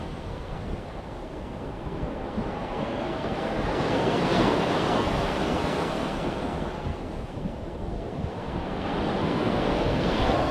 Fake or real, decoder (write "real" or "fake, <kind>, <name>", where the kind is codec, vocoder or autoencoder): fake, codec, SNAC